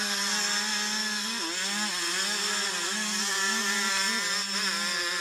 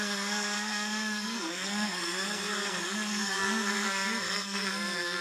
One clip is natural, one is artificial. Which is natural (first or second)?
first